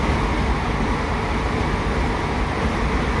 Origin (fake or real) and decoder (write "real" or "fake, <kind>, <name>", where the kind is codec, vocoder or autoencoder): real